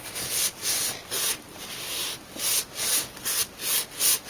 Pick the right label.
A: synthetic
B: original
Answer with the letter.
B